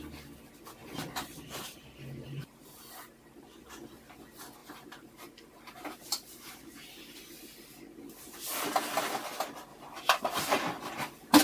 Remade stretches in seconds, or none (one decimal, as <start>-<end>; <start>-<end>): 0.8-3.7; 4.6-6.6; 9.7-11.4

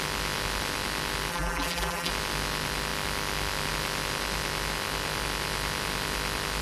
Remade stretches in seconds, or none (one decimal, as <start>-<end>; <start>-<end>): 1.3-2.1

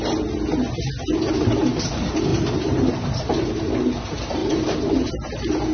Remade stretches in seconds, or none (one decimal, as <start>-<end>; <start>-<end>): 2.3-3.7; 4.4-5.1

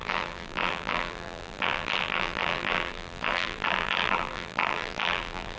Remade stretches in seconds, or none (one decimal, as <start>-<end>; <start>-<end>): 0.0-5.6

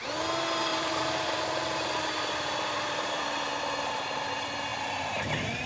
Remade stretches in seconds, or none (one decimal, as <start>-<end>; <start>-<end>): 0.7-3.2; 4.7-5.7